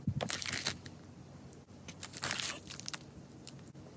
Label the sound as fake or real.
real